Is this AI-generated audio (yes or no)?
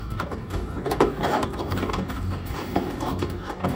yes